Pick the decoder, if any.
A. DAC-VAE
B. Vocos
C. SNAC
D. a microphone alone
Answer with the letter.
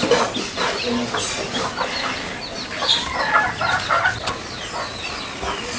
D